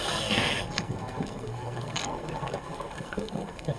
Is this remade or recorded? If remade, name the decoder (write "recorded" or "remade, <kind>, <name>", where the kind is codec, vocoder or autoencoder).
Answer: remade, codec, SNAC